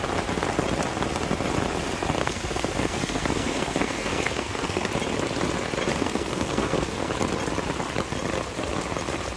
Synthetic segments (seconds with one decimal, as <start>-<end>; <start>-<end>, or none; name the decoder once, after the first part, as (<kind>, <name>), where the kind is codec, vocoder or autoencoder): 2.2-4.9 (codec, SNAC); 5.9-7.1